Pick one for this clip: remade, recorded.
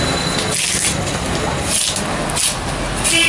recorded